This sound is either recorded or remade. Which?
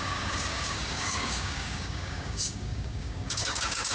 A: remade